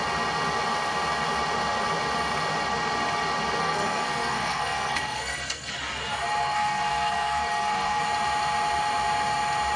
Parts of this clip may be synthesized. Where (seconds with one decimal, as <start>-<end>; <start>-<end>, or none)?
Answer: 3.6-5.7; 6.4-8.0